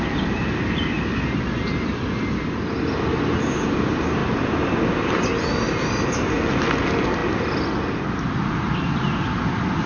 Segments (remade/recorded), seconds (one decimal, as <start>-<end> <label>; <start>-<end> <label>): 0.0-4.2 recorded; 4.2-5.1 remade; 5.1-7.2 recorded; 7.2-7.7 remade; 7.7-9.9 recorded

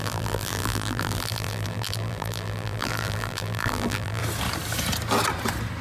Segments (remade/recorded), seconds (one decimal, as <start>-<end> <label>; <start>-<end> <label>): 0.0-4.2 remade; 4.2-5.8 recorded

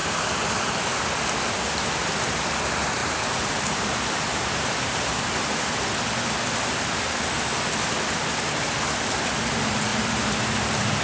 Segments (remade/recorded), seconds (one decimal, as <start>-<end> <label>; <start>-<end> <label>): 0.0-0.5 remade; 0.5-3.0 recorded; 3.0-5.1 remade; 5.1-9.9 recorded; 9.9-11.0 remade